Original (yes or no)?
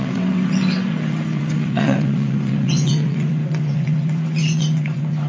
no